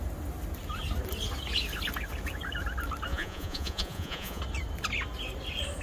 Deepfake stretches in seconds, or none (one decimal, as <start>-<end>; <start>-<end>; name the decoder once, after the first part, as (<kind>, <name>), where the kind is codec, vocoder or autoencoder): 3.1-4.4 (vocoder, Vocos)